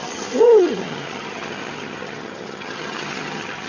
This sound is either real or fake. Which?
fake